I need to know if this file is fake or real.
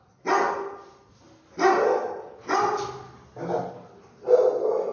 real